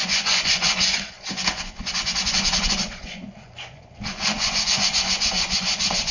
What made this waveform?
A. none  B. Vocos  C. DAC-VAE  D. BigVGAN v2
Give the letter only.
B